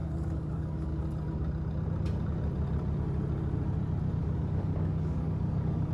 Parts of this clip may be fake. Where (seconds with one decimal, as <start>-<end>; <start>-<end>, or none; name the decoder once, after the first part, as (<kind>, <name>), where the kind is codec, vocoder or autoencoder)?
0.0-0.9 (codec, DAC); 4.2-5.9